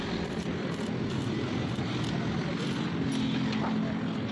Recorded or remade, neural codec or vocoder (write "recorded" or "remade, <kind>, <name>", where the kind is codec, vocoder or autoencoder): recorded